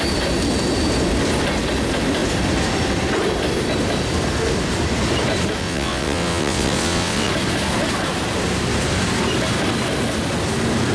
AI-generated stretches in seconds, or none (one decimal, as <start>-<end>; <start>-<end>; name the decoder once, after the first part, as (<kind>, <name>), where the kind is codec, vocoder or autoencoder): 5.6-7.3 (vocoder, WaveNeXt)